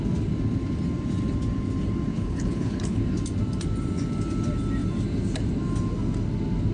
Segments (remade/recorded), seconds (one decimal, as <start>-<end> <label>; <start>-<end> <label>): 0.0-2.1 recorded; 2.1-3.0 remade; 3.0-6.7 recorded